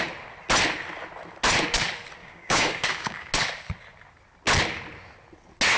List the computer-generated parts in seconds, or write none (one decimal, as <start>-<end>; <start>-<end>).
2.2-3.3